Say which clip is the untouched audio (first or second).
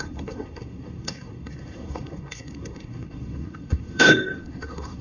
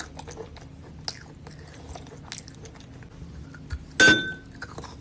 second